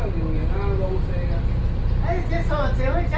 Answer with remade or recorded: recorded